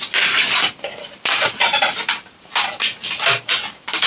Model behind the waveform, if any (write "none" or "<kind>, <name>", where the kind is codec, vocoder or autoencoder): none